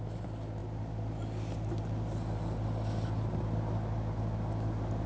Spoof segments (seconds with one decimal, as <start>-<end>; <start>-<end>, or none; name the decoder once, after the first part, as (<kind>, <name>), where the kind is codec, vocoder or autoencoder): none